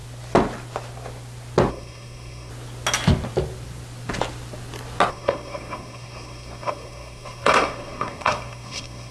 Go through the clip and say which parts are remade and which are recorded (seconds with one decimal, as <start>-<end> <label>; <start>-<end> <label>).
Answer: 0.0-1.7 recorded; 1.7-2.5 remade; 2.5-5.1 recorded; 5.1-9.1 remade